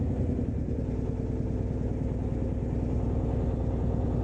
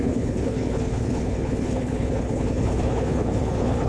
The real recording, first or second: first